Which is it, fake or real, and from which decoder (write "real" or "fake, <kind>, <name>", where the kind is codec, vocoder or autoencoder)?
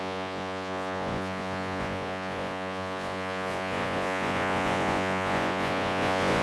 fake, vocoder, Vocos